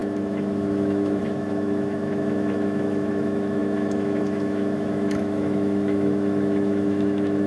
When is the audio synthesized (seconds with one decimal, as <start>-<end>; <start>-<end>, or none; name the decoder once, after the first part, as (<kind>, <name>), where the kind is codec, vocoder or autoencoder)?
0.0-7.5 (autoencoder, DAC-VAE)